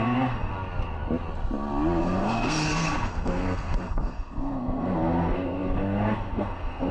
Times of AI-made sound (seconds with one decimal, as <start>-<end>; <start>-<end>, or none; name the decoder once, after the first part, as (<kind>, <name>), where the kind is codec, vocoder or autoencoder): 0.0-0.5 (codec, SNAC); 2.0-6.9